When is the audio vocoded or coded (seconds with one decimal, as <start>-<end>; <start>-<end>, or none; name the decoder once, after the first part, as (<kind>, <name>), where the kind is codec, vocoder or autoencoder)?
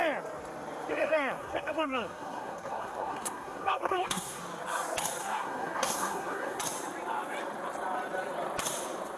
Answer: 0.9-4.4 (codec, SNAC); 5.2-6.6